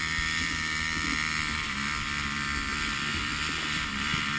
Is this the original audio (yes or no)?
no